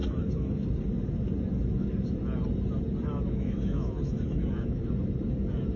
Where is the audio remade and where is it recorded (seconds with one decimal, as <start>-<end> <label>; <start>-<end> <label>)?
0.0-0.7 remade; 0.7-3.1 recorded; 3.1-4.9 remade; 4.9-5.8 recorded